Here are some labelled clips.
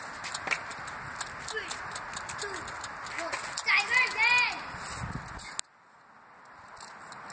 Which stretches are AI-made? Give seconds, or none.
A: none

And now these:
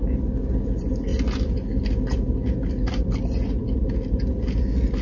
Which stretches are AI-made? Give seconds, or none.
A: none

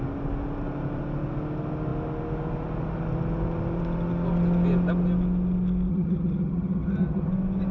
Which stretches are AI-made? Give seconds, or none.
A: 5.9-7.3 (vocoder, HiFi-GAN)

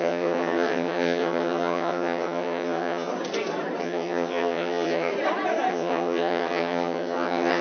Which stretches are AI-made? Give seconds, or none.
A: 0.0-3.1 (vocoder, HiFi-GAN); 3.8-5.1; 5.7-7.6